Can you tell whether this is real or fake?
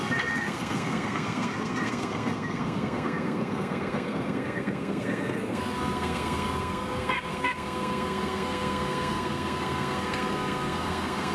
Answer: fake